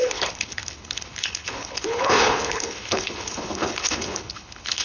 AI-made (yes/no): yes